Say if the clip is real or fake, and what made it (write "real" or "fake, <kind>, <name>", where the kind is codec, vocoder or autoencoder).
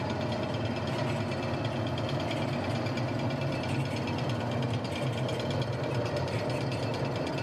real